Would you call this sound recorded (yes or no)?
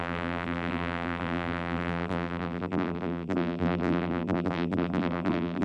no